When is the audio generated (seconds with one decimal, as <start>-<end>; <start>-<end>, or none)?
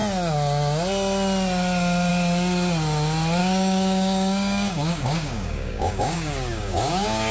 3.4-7.3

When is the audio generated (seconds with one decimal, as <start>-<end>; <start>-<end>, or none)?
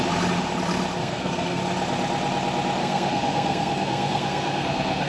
1.0-1.6; 2.8-5.1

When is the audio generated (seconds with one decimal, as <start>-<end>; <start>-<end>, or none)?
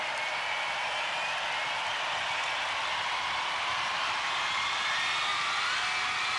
none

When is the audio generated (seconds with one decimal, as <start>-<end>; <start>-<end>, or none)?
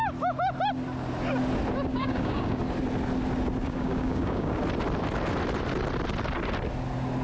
1.9-2.6; 3.6-4.6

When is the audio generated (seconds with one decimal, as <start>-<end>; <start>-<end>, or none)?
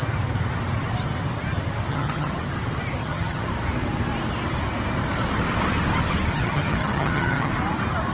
1.9-2.4; 3.0-3.5; 6.3-7.5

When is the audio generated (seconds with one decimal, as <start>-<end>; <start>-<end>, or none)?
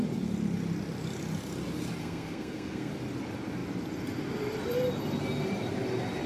2.0-2.9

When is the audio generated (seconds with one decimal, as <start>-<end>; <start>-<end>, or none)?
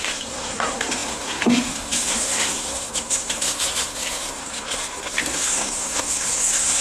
0.0-6.8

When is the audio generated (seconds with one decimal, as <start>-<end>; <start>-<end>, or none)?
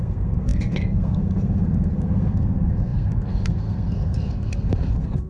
0.0-5.3